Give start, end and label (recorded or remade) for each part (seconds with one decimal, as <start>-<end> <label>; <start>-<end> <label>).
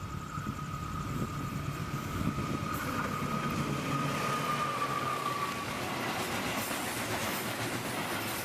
0.0-1.8 recorded; 1.8-2.4 remade; 2.4-4.9 recorded; 4.9-5.9 remade; 5.9-8.4 recorded